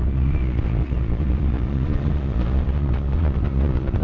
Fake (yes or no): yes